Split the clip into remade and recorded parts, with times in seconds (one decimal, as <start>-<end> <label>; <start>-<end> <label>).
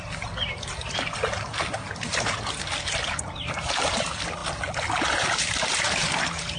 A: 0.0-6.6 recorded